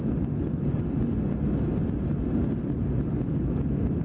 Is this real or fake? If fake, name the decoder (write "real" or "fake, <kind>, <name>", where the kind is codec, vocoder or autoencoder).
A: real